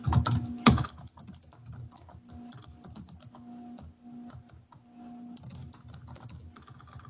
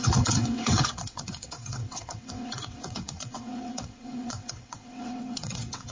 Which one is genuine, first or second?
first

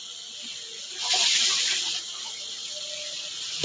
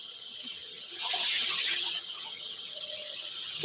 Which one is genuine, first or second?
first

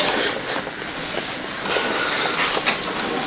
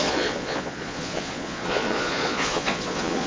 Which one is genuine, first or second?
first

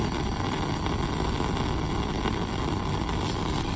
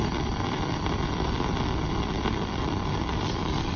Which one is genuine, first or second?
first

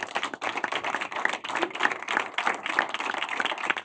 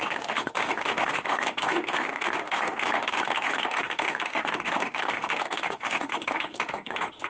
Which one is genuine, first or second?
first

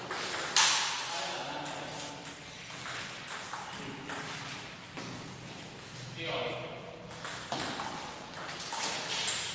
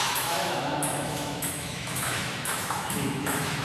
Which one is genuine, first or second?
first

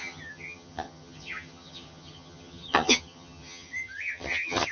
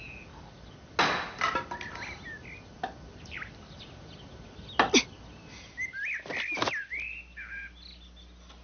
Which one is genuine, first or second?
second